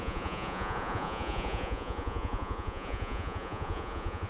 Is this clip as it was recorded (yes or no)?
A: no